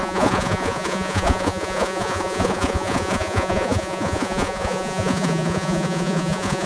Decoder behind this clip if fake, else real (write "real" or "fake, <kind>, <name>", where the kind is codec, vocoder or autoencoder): fake, vocoder, Vocos